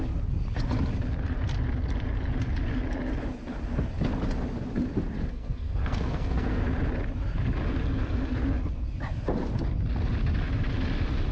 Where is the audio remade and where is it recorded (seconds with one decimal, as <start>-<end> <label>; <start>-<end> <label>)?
0.0-5.3 recorded; 5.3-6.6 remade; 6.6-11.3 recorded